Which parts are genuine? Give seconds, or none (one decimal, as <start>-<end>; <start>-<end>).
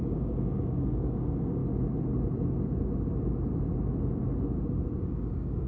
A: 1.6-5.0